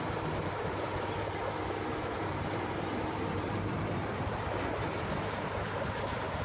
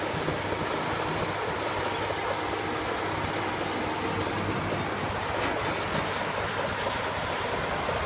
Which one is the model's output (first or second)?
first